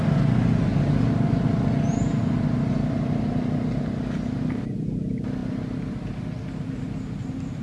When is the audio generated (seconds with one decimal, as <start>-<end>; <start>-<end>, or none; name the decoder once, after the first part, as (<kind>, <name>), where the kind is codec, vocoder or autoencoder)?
none